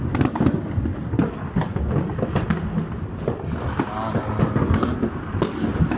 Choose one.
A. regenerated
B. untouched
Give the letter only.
B